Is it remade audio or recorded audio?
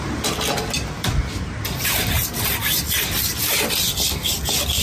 recorded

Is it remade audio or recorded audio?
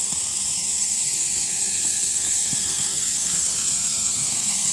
remade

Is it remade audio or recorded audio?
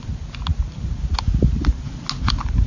recorded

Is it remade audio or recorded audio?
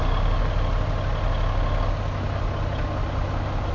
recorded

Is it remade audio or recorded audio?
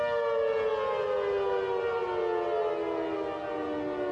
recorded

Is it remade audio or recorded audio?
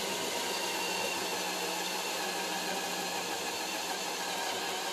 recorded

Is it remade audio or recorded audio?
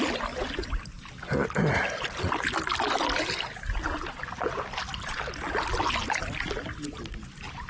recorded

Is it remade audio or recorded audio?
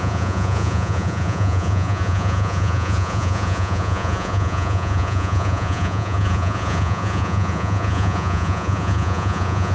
remade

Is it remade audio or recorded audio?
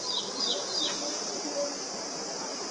recorded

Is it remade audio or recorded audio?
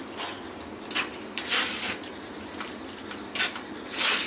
recorded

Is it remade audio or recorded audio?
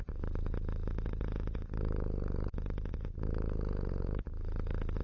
recorded